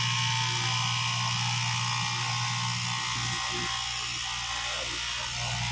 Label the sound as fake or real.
real